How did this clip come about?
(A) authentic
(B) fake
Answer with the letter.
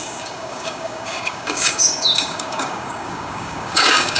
B